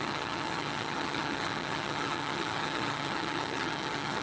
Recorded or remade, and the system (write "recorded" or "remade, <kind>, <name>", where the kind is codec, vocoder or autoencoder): remade, vocoder, HiFi-GAN